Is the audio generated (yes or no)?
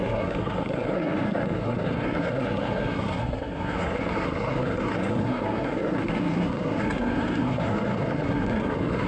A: yes